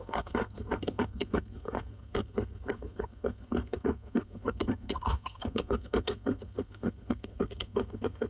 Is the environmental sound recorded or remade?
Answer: remade